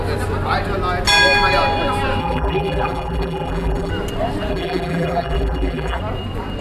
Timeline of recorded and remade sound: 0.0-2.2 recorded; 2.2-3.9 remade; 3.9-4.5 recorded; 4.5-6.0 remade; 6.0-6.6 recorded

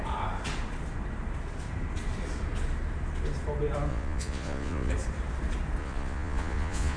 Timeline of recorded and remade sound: 0.0-3.9 recorded; 3.9-4.9 remade; 4.9-5.8 recorded; 5.8-7.0 remade

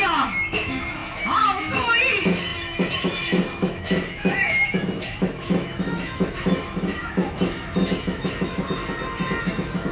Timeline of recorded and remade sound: 0.0-8.8 remade; 8.8-9.4 recorded; 9.4-9.9 remade

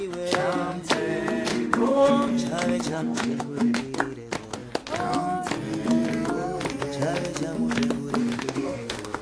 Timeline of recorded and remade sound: 0.0-1.5 recorded; 1.5-2.1 remade; 2.1-2.9 recorded; 2.9-3.8 remade; 3.8-8.2 recorded; 8.2-9.2 remade

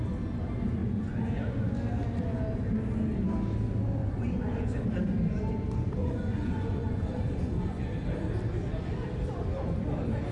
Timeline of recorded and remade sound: 0.0-0.8 recorded; 0.8-1.5 remade; 1.5-4.0 recorded; 4.0-4.8 remade; 4.8-6.0 recorded; 6.0-7.9 remade; 7.9-10.3 recorded

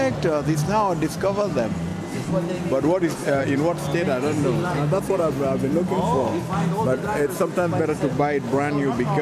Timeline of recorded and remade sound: 0.0-9.2 recorded